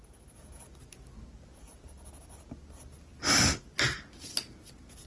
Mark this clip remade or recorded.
recorded